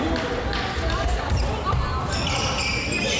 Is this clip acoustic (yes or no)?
yes